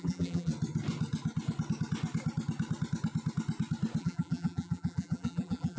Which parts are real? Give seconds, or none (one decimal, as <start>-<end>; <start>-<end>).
0.5-4.0